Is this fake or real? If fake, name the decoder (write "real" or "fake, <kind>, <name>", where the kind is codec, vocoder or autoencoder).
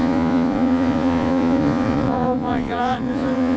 fake, vocoder, Vocos